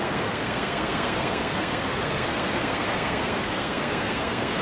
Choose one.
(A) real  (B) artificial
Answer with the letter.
B